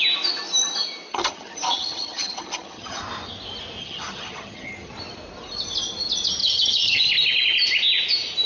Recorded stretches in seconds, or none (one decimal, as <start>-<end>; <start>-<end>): 0.0-1.1; 3.0-3.8; 4.9-6.4; 7.1-8.5